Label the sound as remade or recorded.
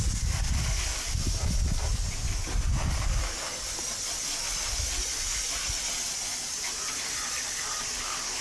recorded